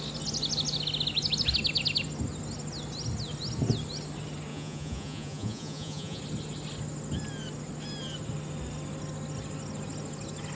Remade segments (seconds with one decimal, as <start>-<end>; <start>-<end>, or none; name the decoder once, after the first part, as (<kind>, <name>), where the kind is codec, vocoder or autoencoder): 4.5-6.2 (vocoder, Vocos)